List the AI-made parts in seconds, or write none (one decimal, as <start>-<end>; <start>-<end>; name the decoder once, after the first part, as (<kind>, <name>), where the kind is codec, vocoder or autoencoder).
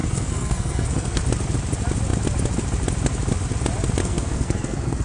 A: 0.0-1.2 (codec, SNAC); 4.0-5.0